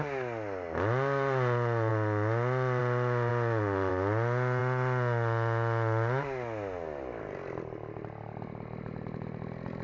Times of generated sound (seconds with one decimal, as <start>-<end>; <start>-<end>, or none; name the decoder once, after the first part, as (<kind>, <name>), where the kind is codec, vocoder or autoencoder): none